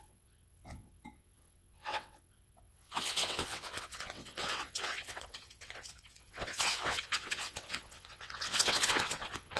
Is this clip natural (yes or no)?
no